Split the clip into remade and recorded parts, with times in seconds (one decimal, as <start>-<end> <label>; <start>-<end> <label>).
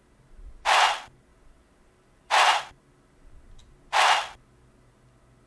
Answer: 0.0-1.3 recorded; 1.3-2.6 remade; 2.6-5.5 recorded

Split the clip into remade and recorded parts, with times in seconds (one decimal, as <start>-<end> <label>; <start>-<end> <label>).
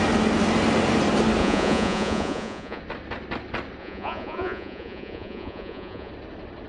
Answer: 0.0-1.4 recorded; 1.4-2.8 remade; 2.8-3.8 recorded; 3.8-6.1 remade; 6.1-6.7 recorded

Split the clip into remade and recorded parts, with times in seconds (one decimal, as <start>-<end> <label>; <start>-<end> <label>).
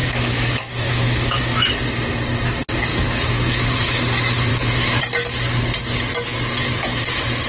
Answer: 0.0-1.7 remade; 1.7-2.9 recorded; 2.9-4.0 remade; 4.0-4.5 recorded; 4.5-5.0 remade; 5.0-7.5 recorded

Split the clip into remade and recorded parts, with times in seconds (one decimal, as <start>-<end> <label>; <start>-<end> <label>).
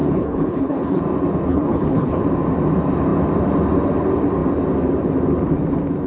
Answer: 0.0-1.0 remade; 1.0-1.5 recorded; 1.5-2.2 remade; 2.2-6.1 recorded